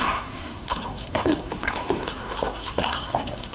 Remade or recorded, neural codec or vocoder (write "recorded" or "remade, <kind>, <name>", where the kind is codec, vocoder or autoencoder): remade, codec, SNAC